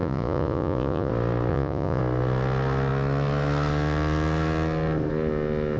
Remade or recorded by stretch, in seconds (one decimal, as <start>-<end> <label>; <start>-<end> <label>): 0.0-1.1 remade; 1.1-1.5 recorded; 1.5-2.0 remade; 2.0-5.8 recorded